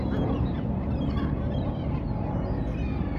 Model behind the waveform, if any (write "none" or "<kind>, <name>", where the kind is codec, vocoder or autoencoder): none